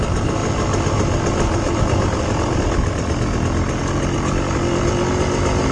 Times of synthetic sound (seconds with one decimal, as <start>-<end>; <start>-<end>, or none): none